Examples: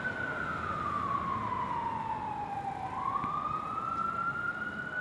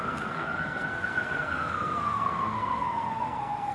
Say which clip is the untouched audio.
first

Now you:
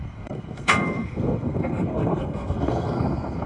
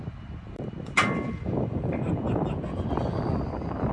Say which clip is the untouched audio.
second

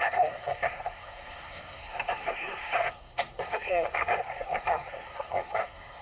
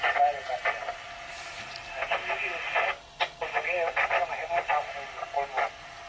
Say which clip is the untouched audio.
second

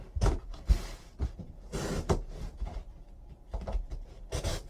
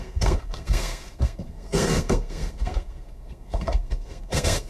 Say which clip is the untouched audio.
first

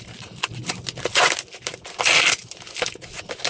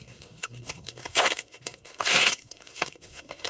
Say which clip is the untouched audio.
first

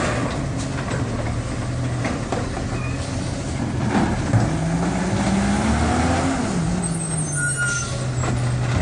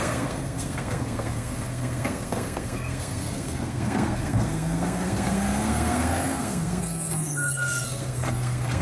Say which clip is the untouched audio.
first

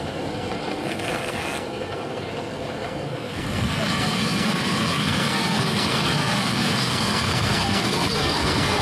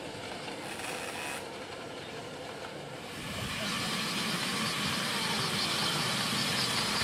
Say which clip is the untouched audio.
second